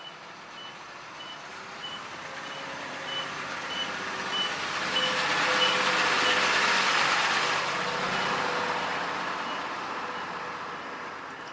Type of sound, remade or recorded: recorded